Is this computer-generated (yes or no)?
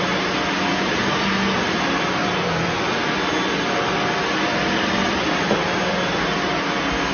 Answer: no